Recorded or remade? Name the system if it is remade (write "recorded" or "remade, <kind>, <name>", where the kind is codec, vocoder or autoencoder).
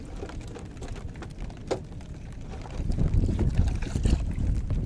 recorded